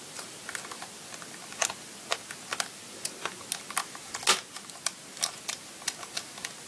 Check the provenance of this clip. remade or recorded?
recorded